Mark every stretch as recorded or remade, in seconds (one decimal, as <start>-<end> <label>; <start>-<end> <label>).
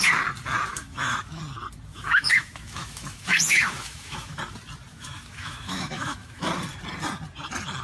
0.0-0.7 recorded; 0.7-1.4 remade; 1.4-1.9 recorded; 1.9-4.4 remade; 4.4-4.9 recorded; 4.9-6.5 remade; 6.5-7.8 recorded